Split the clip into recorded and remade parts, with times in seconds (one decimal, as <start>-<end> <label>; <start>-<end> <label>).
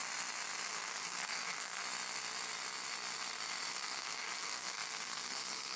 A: 0.0-0.7 recorded; 0.7-1.8 remade; 1.8-3.7 recorded; 3.7-5.8 remade